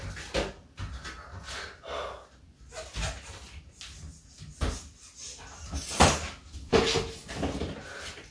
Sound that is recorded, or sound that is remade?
recorded